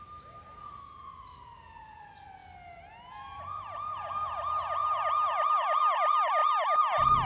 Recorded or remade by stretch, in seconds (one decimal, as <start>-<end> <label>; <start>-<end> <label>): 0.0-7.3 recorded